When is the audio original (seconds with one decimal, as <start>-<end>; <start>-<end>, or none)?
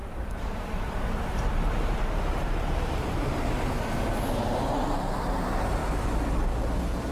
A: 5.8-7.1